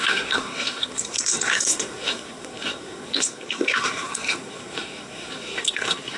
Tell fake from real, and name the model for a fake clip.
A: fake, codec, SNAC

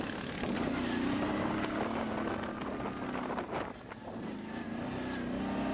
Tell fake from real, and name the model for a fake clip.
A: real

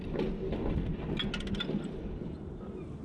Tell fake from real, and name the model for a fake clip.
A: real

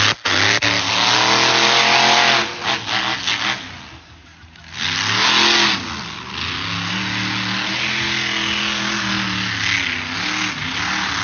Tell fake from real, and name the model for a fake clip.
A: real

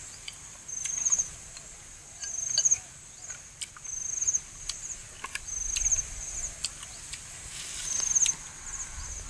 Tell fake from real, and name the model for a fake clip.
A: real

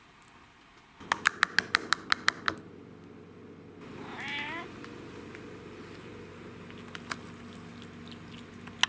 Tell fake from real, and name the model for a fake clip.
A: real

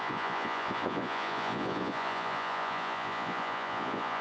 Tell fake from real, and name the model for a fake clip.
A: fake, vocoder, Vocos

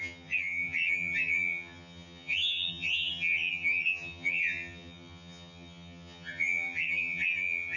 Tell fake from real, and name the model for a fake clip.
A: fake, vocoder, HiFi-GAN